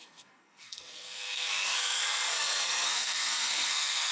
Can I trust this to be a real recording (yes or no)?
no